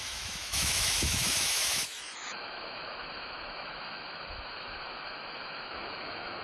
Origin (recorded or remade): remade